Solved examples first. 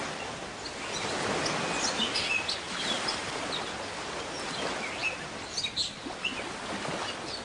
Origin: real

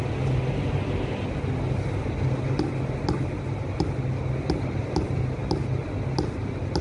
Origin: real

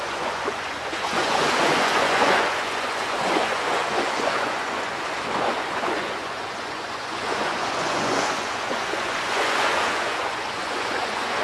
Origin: fake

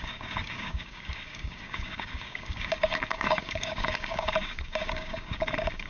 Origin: fake